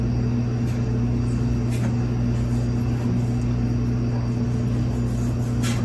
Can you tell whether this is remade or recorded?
recorded